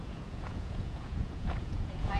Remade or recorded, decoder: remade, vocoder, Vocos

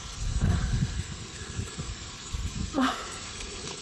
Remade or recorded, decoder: remade, codec, SNAC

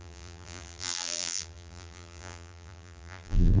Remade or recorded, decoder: remade, vocoder, BigVGAN v2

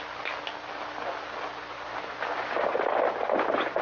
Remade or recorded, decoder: recorded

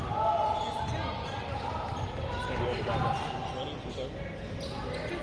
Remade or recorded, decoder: recorded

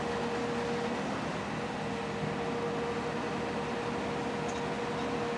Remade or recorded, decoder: recorded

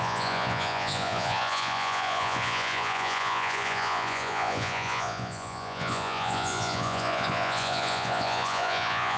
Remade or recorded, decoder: remade, vocoder, Vocos